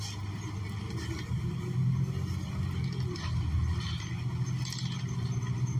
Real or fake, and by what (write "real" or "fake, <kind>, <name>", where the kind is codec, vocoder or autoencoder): real